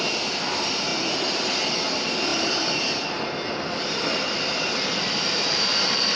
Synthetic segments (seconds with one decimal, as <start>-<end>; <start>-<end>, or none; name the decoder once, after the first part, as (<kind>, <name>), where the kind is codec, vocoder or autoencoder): 0.0-0.9 (vocoder, BigVGAN v2); 1.7-2.3; 4.4-6.2